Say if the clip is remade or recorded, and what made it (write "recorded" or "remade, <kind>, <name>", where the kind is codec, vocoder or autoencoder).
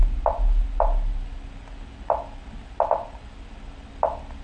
recorded